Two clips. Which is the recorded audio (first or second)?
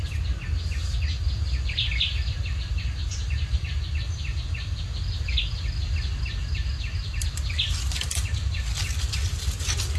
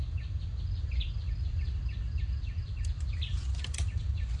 first